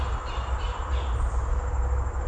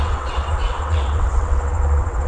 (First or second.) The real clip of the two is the first